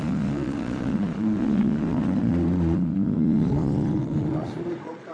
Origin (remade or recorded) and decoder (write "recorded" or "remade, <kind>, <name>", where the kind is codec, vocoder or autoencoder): remade, vocoder, Vocos